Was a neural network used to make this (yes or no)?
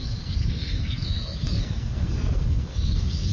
yes